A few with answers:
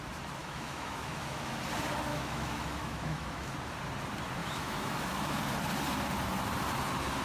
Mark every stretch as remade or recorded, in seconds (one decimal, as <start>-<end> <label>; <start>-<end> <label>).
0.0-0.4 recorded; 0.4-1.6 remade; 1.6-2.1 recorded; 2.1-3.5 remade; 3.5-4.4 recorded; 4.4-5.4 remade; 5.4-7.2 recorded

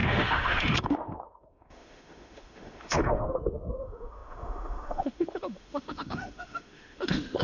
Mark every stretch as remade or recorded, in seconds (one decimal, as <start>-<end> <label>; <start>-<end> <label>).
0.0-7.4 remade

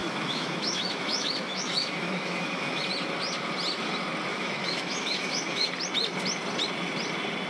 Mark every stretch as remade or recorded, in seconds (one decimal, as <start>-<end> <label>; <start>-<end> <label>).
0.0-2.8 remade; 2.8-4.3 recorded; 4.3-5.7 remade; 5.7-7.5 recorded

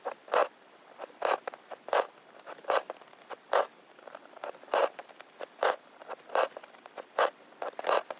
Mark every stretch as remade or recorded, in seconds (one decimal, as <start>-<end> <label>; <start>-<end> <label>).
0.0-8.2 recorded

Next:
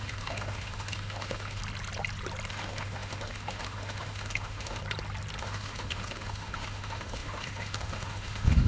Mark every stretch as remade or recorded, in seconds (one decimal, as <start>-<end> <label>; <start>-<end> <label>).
0.0-1.6 remade; 1.6-2.5 recorded; 2.5-4.8 remade; 4.8-5.4 recorded; 5.4-8.7 remade

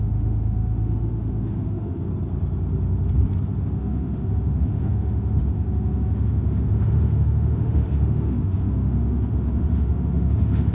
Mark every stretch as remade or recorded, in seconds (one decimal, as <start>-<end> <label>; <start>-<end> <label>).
0.0-2.1 remade; 2.1-3.6 recorded; 3.6-10.7 remade